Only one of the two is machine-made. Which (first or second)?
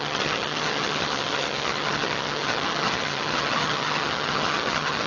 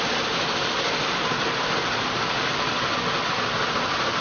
first